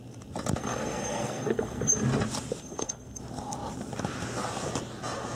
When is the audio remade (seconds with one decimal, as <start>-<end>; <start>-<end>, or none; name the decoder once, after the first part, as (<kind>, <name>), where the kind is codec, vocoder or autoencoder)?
0.6-1.9 (codec, SNAC); 2.6-3.2